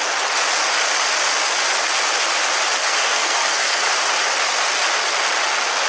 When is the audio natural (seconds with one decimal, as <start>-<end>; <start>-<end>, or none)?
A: 0.0-2.8; 3.9-5.9